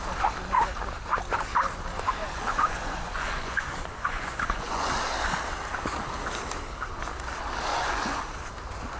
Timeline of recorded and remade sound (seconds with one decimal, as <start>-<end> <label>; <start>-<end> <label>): 0.0-2.2 recorded; 2.2-4.9 remade; 4.9-7.7 recorded; 7.7-8.2 remade; 8.2-9.0 recorded